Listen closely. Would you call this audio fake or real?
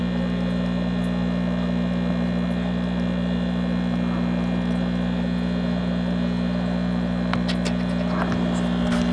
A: real